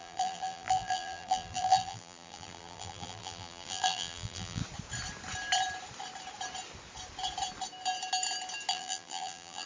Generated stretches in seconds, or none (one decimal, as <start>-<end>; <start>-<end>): 0.0-4.6; 8.7-9.7